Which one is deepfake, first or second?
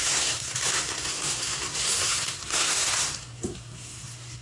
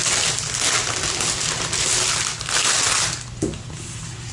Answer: first